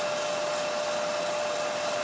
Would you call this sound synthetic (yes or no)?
no